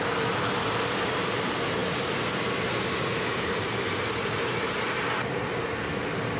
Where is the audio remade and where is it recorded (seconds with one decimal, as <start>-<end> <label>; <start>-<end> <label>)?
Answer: 0.0-6.4 recorded